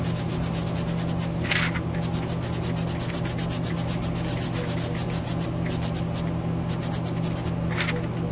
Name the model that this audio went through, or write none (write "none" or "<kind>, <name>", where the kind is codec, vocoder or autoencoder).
none